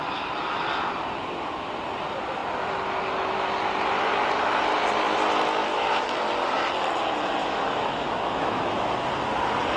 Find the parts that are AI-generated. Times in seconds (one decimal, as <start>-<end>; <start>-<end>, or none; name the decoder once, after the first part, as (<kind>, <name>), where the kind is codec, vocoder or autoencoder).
5.7-6.3 (autoencoder, DAC-VAE); 7.4-8.9